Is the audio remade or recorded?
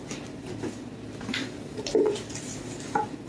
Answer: recorded